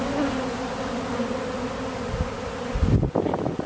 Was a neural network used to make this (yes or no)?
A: no